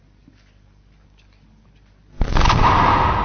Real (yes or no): yes